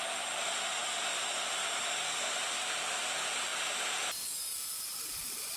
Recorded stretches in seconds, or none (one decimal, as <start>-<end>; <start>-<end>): 0.0-5.6